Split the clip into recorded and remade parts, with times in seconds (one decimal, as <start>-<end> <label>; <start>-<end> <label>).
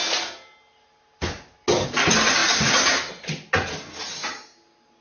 0.0-5.0 recorded